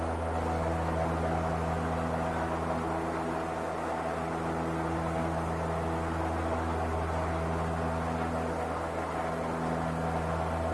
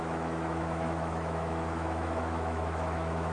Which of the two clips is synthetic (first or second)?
second